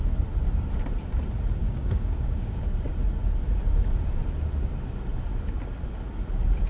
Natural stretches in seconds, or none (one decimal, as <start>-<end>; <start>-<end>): 0.0-1.6; 2.6-6.7